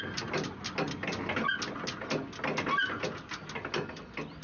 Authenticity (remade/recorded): recorded